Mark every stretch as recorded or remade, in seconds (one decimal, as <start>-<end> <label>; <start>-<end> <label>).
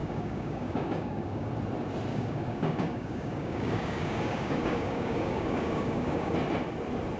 0.0-1.5 remade; 1.5-2.1 recorded; 2.1-6.3 remade; 6.3-7.2 recorded